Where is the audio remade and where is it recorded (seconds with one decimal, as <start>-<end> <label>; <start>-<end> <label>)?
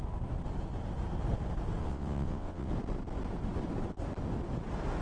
0.0-1.8 recorded; 1.8-2.7 remade; 2.7-5.0 recorded